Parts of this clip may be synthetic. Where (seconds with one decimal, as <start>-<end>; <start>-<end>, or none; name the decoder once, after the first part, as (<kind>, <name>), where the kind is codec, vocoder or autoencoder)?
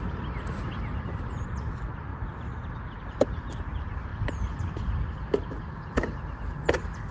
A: none